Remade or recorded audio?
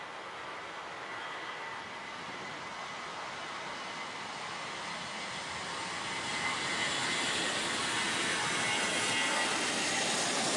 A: recorded